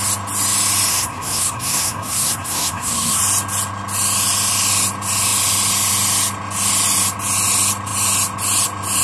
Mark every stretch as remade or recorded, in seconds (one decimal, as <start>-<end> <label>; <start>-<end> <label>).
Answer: 0.0-0.9 recorded; 0.9-3.2 remade; 3.2-9.0 recorded